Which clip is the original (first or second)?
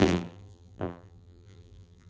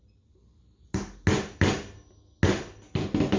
second